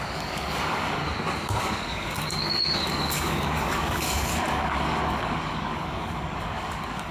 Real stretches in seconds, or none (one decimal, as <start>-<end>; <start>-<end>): 1.0-1.6